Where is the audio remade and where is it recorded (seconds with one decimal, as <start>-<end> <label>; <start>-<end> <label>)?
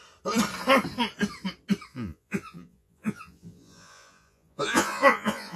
0.0-1.9 recorded; 1.9-5.6 remade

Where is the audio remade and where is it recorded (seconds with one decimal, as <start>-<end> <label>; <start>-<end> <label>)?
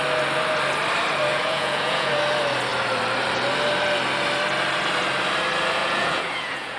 0.0-1.3 recorded; 1.3-2.1 remade; 2.1-5.8 recorded; 5.8-6.8 remade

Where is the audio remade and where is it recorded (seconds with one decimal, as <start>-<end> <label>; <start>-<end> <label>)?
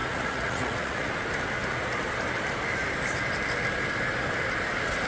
0.0-1.1 remade; 1.1-5.1 recorded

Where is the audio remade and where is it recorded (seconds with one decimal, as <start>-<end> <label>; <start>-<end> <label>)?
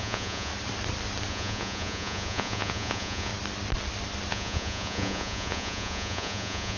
0.0-0.5 remade; 0.5-1.3 recorded; 1.3-3.3 remade; 3.3-4.3 recorded; 4.3-6.8 remade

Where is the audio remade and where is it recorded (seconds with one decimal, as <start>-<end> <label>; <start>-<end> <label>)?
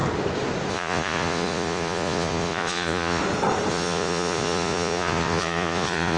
0.0-0.7 recorded; 0.7-3.2 remade; 3.2-3.7 recorded; 3.7-6.2 remade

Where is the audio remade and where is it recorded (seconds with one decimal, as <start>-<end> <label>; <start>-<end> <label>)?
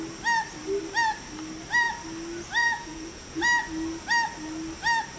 0.0-2.6 recorded; 2.6-3.4 remade; 3.4-5.2 recorded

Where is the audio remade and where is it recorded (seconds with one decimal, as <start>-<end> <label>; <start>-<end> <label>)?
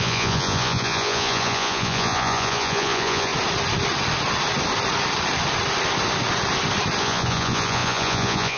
0.0-3.3 remade; 3.3-7.0 recorded; 7.0-8.6 remade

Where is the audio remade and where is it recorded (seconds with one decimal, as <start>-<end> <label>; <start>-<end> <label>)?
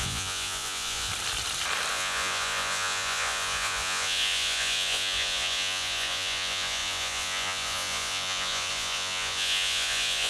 0.0-1.1 remade; 1.1-1.9 recorded; 1.9-10.3 remade